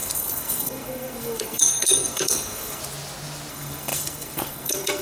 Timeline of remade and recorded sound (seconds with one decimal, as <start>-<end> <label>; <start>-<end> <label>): 0.0-2.8 remade; 2.8-3.5 recorded; 3.5-5.0 remade